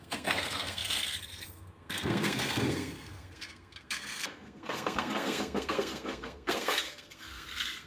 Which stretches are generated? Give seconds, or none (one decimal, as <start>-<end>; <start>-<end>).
0.0-7.9